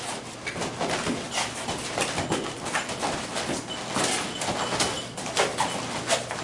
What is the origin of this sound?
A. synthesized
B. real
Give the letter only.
B